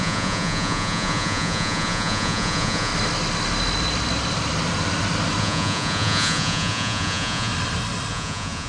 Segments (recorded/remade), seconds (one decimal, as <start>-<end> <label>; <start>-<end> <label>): 0.0-2.9 remade; 2.9-5.4 recorded; 5.4-7.5 remade; 7.5-8.1 recorded; 8.1-8.7 remade